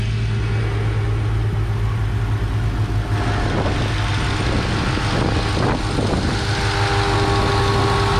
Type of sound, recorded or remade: recorded